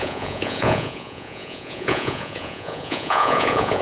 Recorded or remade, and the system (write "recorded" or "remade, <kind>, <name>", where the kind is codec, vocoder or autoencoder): remade, vocoder, Vocos